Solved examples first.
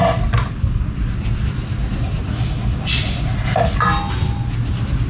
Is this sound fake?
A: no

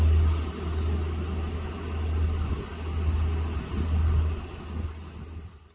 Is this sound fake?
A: no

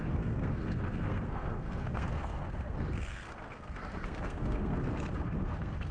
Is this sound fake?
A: yes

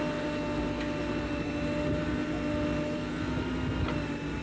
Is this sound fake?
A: no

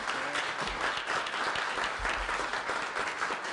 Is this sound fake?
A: no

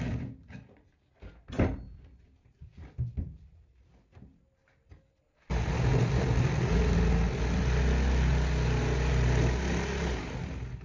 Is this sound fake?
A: no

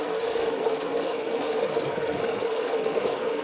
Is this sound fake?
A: yes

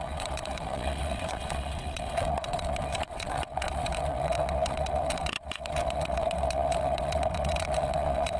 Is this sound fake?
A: yes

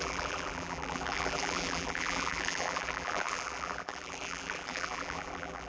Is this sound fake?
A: yes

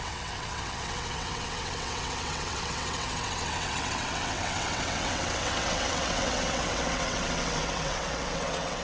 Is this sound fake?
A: yes